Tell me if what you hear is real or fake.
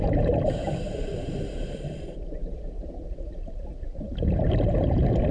fake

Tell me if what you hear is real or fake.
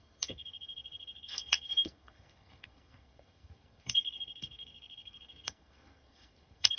fake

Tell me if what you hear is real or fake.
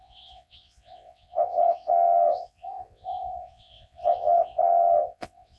fake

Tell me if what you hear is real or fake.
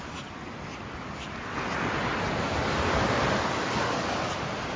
real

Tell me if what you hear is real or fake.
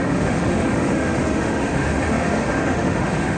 fake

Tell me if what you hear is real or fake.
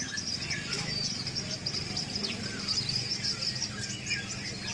real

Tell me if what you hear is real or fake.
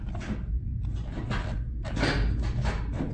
real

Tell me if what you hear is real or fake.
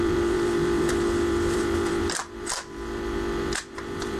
fake